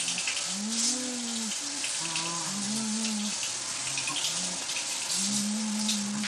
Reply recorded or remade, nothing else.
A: recorded